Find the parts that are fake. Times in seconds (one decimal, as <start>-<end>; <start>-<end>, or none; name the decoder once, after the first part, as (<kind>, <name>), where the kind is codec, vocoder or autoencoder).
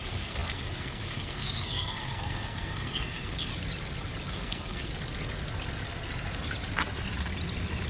0.0-3.5 (codec, SNAC); 4.3-4.9